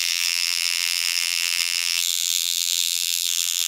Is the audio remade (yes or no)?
yes